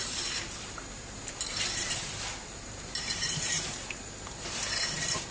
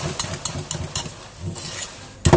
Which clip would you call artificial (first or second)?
first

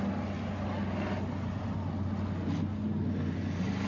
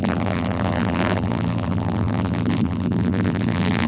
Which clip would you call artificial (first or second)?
second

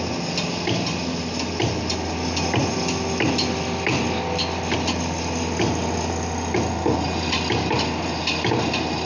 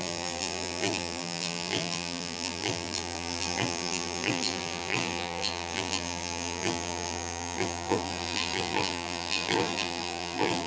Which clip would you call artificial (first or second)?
second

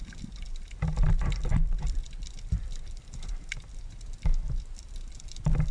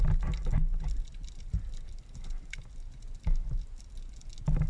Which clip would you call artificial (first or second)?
first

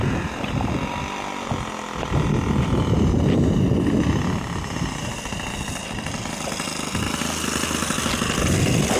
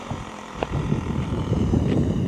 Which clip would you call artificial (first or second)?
second